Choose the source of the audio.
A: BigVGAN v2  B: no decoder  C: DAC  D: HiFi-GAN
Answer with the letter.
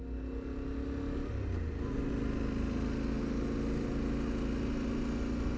B